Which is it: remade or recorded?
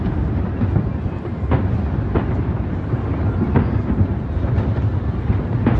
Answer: recorded